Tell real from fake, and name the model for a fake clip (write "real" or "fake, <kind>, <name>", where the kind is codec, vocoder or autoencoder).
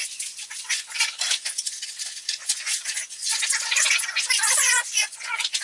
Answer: fake, vocoder, Vocos